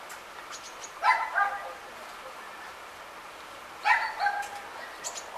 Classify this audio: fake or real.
real